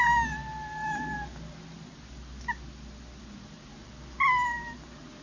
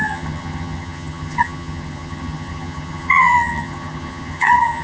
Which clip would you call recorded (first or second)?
first